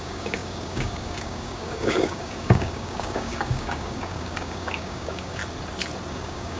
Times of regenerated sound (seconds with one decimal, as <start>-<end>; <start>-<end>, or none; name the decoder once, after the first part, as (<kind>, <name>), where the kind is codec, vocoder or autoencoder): 0.0-5.4 (codec, DAC); 6.1-6.6

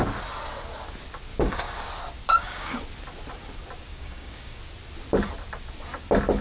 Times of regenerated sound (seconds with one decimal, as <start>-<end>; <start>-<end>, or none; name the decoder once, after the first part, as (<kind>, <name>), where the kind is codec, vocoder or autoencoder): 1.3-1.9 (codec, DAC); 2.3-2.8; 3.9-4.6

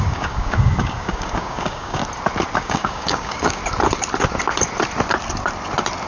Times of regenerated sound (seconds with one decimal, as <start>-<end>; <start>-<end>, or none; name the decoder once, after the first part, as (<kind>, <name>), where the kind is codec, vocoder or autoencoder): 0.0-2.0 (codec, DAC); 2.6-3.6

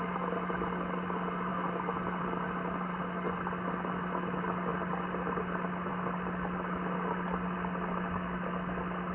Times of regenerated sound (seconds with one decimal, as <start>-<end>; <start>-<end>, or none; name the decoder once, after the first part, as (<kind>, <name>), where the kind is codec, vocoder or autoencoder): none

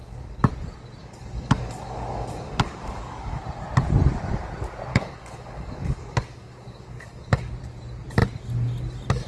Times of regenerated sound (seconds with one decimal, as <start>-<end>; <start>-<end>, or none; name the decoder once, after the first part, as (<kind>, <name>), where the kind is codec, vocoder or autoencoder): 0.0-0.5 (codec, DAC); 1.0-3.4; 4.9-7.5

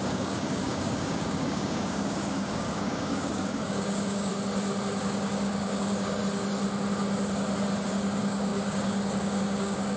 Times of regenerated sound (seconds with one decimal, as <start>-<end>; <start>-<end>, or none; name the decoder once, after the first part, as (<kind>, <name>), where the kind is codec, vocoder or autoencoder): 0.0-4.3 (codec, DAC); 5.0-6.2; 7.9-10.0

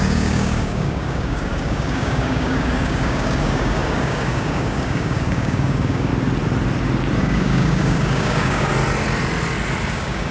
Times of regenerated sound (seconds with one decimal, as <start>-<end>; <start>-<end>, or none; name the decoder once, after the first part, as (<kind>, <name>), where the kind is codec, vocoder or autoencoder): 0.0-6.1 (codec, DAC); 7.2-8.7; 9.9-10.3